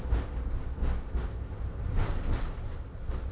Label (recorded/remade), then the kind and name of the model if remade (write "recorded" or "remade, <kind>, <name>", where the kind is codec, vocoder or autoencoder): recorded